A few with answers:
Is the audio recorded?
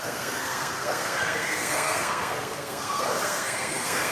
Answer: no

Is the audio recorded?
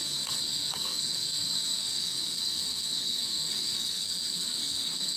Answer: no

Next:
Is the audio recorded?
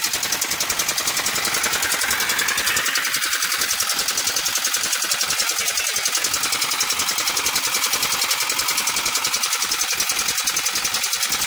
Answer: yes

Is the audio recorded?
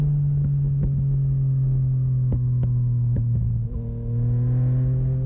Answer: yes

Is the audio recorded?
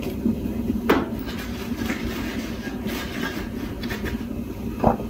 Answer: yes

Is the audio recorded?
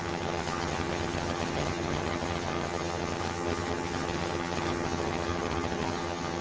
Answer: no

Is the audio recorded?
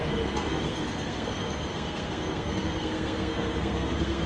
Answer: no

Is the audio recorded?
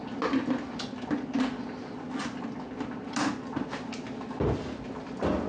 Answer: yes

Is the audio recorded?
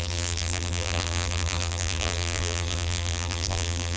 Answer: no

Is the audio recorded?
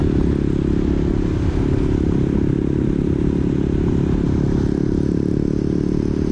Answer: yes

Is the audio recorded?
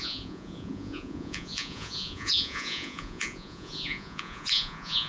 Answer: no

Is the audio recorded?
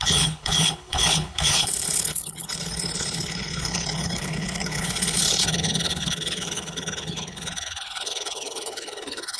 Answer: no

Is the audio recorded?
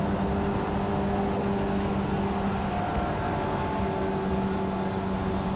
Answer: yes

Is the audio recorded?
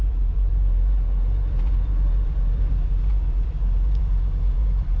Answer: no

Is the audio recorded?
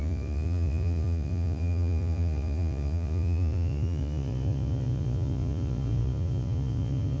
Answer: no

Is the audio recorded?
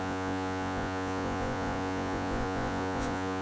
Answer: no